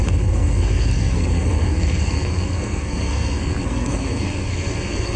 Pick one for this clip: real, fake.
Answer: fake